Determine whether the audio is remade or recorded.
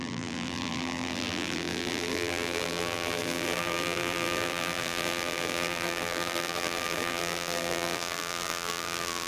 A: remade